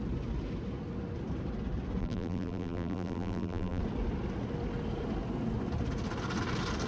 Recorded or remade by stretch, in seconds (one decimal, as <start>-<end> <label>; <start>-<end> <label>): 0.0-2.0 recorded; 2.0-3.8 remade; 3.8-6.9 recorded